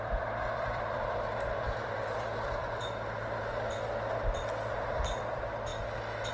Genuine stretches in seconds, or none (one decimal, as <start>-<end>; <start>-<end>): 5.7-6.3